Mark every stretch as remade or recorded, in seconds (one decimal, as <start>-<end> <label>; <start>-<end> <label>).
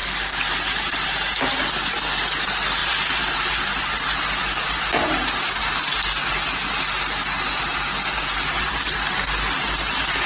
0.0-2.8 recorded; 2.8-3.6 remade; 3.6-5.2 recorded; 5.2-5.7 remade; 5.7-10.3 recorded